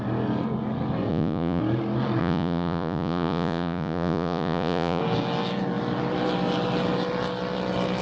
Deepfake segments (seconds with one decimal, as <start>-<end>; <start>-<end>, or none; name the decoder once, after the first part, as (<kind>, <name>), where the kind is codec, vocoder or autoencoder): 1.1-1.6 (vocoder, Vocos); 2.2-5.0